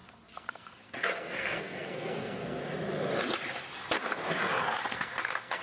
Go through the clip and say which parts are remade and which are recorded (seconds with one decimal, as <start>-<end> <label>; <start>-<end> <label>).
0.0-2.6 remade; 2.6-4.9 recorded; 4.9-5.6 remade